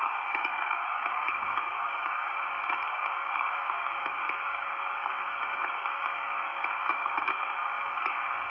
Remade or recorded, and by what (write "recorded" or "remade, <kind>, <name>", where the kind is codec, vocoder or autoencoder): remade, codec, DAC